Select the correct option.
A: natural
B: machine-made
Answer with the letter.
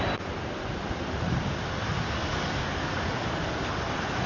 A